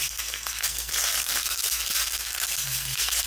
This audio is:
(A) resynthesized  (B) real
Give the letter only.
A